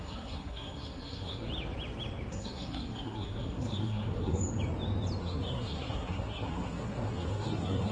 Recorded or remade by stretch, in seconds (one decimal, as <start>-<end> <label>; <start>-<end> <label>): 0.0-1.5 remade; 1.5-2.3 recorded; 2.3-4.4 remade; 4.4-5.2 recorded; 5.2-7.9 remade